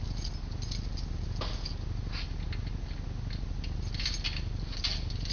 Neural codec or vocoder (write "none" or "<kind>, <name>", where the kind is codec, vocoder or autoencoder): none